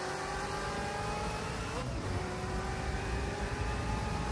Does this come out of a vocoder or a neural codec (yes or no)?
no